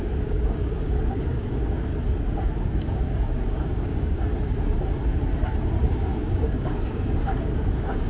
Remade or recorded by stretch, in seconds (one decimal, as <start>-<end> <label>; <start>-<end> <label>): 0.0-1.9 remade; 1.9-2.6 recorded; 2.6-4.3 remade; 4.3-5.9 recorded; 5.9-8.1 remade